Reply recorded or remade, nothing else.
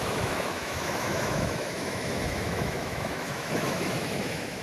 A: remade